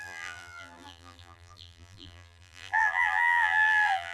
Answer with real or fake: fake